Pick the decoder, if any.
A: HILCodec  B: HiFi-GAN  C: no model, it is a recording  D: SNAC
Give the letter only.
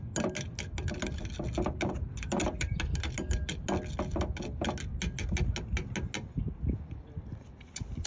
C